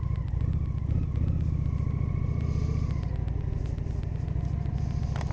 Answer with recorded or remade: recorded